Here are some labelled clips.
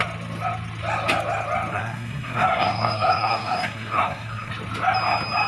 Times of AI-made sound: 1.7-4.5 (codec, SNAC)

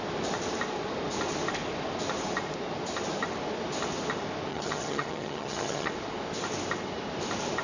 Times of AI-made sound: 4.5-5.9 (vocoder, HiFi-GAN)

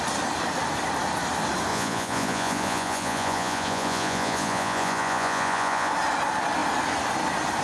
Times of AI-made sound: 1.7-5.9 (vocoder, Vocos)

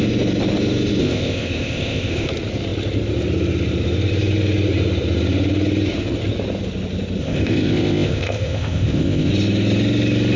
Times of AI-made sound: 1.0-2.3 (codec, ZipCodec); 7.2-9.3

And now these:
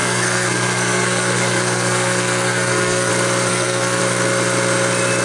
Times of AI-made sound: 0.0-3.1 (codec, SNAC); 3.5-4.0